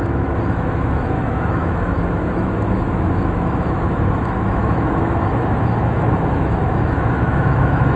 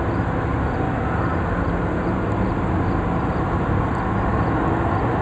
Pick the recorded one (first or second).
second